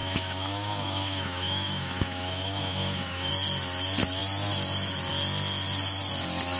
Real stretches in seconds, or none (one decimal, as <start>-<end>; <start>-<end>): 3.3-6.6